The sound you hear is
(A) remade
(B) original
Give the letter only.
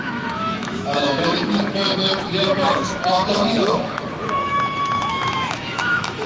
A